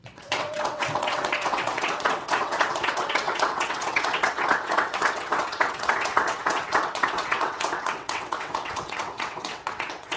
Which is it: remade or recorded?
remade